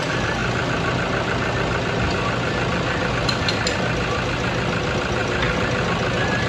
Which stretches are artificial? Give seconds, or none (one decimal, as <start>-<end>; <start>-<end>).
none

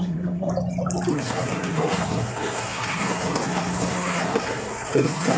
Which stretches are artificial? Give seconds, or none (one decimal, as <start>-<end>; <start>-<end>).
0.0-0.5; 1.1-5.4

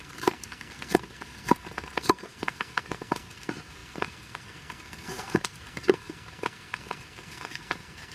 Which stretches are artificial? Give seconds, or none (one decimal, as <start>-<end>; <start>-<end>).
0.0-8.1

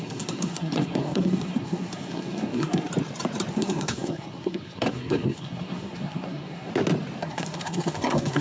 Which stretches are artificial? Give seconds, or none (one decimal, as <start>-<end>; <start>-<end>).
0.0-2.9; 3.5-6.7; 7.2-8.4